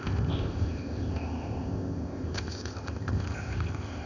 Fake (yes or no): yes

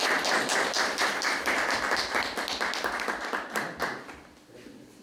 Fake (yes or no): no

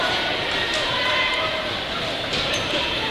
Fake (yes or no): yes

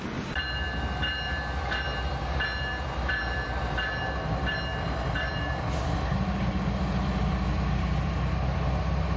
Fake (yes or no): no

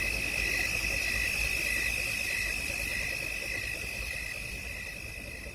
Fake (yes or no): no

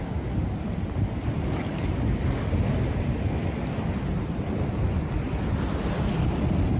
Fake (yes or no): no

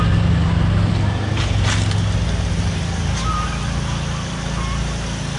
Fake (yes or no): no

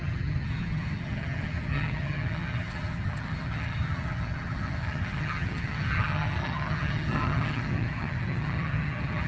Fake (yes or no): yes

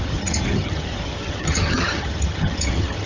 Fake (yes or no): yes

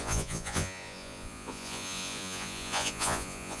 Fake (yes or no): yes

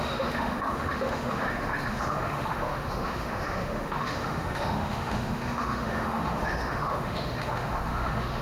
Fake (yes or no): yes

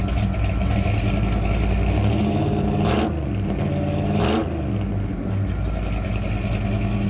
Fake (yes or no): no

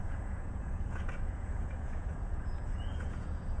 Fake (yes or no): yes